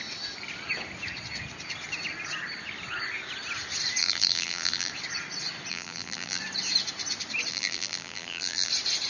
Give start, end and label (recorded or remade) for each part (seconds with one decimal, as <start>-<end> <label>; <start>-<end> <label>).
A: 0.0-4.0 recorded; 4.0-4.9 remade; 4.9-5.7 recorded; 5.7-6.4 remade; 6.4-7.5 recorded; 7.5-8.7 remade; 8.7-9.1 recorded